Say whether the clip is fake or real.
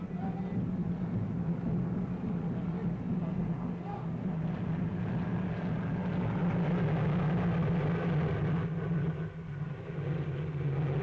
real